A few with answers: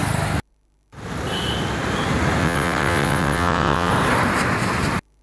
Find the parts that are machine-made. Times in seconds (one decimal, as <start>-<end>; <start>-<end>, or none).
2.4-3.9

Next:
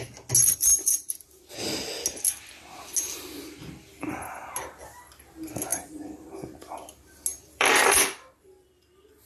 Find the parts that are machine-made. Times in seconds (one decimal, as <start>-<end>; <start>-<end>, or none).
0.7-1.5; 5.7-6.5; 7.3-8.7

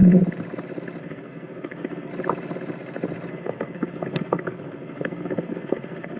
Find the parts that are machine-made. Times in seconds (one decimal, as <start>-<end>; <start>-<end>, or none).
1.0-2.1; 3.3-6.2